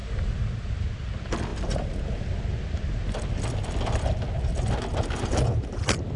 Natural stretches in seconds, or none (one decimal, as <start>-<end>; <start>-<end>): 0.9-6.2